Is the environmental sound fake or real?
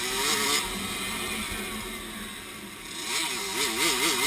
real